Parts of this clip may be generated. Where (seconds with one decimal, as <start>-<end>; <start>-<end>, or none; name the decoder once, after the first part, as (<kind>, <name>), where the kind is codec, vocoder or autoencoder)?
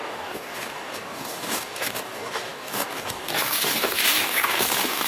0.0-5.1 (codec, DAC)